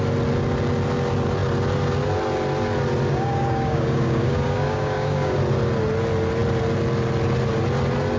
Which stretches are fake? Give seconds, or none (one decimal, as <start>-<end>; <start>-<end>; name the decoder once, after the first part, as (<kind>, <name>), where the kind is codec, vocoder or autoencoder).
3.1-5.4 (codec, DAC)